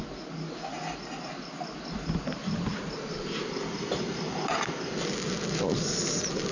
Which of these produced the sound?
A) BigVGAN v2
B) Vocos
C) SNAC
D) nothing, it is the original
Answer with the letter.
D